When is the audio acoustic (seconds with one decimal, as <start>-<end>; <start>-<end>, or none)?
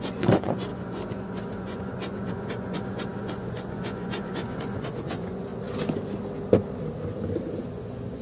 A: 5.5-7.6